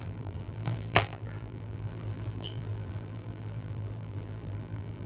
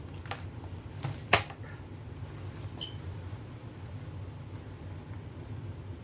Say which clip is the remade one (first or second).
first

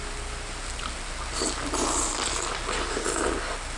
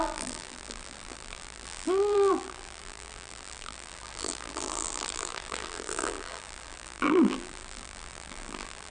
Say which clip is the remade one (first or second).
second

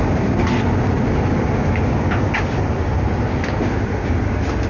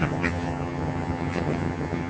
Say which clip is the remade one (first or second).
second